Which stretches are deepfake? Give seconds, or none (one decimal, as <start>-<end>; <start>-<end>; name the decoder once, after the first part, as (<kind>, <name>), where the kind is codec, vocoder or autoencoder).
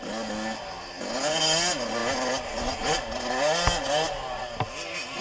none